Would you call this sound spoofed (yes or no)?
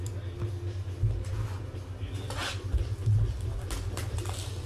no